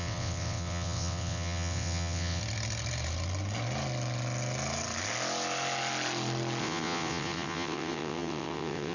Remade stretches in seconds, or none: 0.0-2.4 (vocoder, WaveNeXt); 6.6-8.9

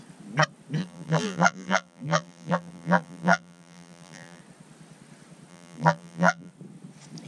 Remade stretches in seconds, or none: 0.8-4.4 (vocoder, BigVGAN v2); 5.5-6.5

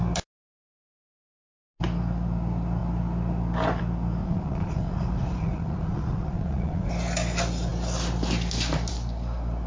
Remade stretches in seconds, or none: 4.2-6.9 (vocoder, Vocos)

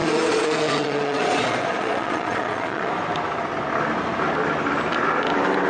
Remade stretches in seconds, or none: 0.0-2.9 (vocoder, Vocos)

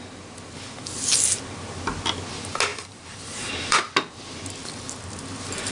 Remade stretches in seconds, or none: 2.7-3.8 (vocoder, BigVGAN v2)